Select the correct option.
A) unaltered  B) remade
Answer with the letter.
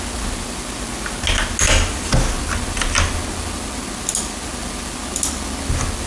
A